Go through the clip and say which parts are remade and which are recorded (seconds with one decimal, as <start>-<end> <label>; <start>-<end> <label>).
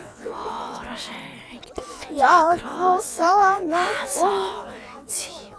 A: 0.0-1.1 remade; 1.1-1.9 recorded; 1.9-5.6 remade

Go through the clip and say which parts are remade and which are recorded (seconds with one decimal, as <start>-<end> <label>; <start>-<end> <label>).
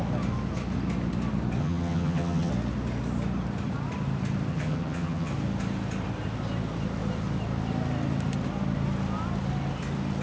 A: 0.0-1.6 recorded; 1.6-2.5 remade; 2.5-4.5 recorded; 4.5-5.3 remade; 5.3-10.2 recorded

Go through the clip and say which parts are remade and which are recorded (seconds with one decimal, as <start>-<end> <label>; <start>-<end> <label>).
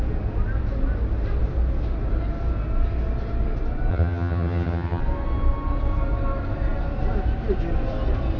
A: 0.0-3.9 recorded; 3.9-5.0 remade; 5.0-8.4 recorded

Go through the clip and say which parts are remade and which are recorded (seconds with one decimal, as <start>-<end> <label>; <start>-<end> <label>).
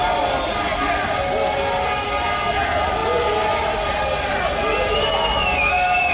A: 0.0-6.1 recorded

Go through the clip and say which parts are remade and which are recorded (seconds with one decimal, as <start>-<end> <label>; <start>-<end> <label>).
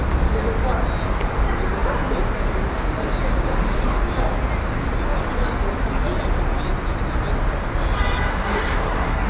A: 0.0-8.3 recorded; 8.3-9.3 remade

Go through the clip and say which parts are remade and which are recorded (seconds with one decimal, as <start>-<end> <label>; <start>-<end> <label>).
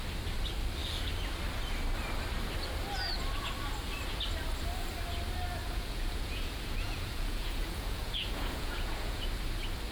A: 0.0-5.6 recorded; 5.6-9.2 remade; 9.2-9.9 recorded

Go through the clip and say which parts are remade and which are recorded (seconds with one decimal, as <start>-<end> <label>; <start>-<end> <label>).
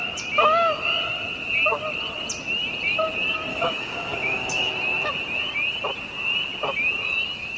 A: 0.0-3.5 recorded; 3.5-4.7 remade; 4.7-7.6 recorded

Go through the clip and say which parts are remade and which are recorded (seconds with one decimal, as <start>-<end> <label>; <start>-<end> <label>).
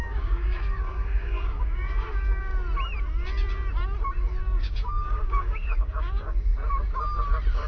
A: 0.0-2.5 remade; 2.5-4.4 recorded; 4.4-6.5 remade; 6.5-7.7 recorded